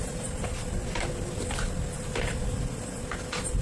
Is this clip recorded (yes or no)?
yes